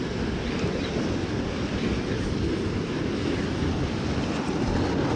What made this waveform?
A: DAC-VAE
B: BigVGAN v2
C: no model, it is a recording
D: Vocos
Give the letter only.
C